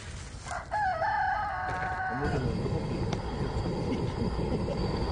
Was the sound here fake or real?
real